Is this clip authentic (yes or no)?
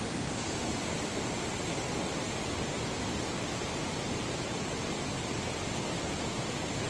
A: yes